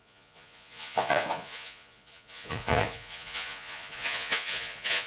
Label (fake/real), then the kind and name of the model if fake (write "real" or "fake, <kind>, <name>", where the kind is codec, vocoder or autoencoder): fake, vocoder, Vocos